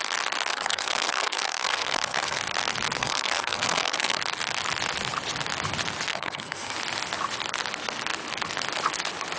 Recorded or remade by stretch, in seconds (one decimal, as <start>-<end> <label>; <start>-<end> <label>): 0.0-0.5 recorded; 0.5-2.4 remade; 2.4-3.0 recorded; 3.0-4.2 remade; 4.2-6.1 recorded; 6.1-6.7 remade; 6.7-9.4 recorded